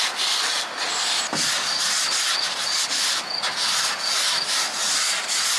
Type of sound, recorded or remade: recorded